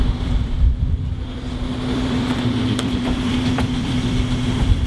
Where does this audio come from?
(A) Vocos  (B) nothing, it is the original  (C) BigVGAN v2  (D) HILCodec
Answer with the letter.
C